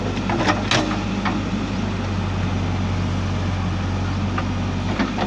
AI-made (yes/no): no